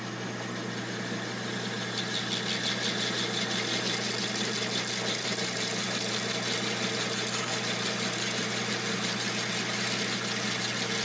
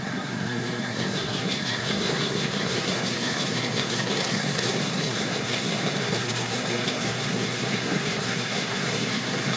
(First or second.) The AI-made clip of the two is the second